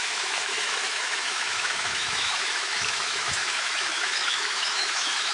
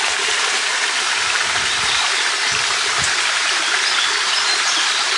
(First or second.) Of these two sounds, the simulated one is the first